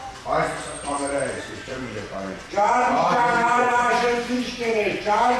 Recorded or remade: remade